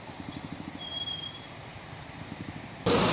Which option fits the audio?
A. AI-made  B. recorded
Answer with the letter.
B